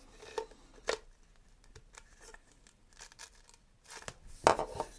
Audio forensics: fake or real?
real